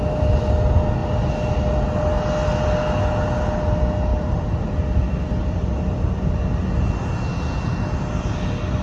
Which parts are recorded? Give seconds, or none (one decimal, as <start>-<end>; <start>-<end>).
0.0-4.1; 6.5-8.8